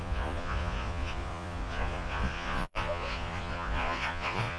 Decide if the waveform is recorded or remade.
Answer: remade